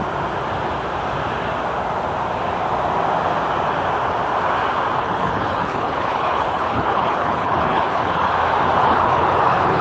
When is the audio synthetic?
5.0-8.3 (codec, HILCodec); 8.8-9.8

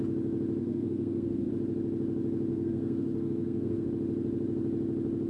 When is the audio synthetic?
0.6-1.5 (codec, SNAC); 2.5-3.9

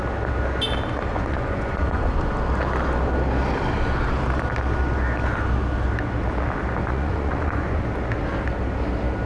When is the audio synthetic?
1.1-2.1 (vocoder, Vocos); 6.8-7.8

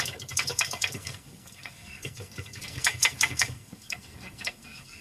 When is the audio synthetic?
0.0-5.0 (codec, SNAC)

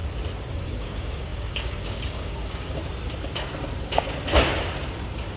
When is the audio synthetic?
0.5-2.8 (codec, DAC)

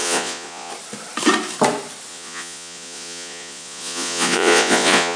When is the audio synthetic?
0.0-0.7 (vocoder, Vocos); 2.1-5.2

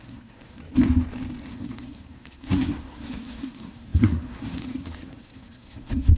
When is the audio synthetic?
0.0-0.6 (codec, SNAC); 1.5-6.2